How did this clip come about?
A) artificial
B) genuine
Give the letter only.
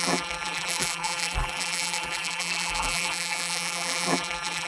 A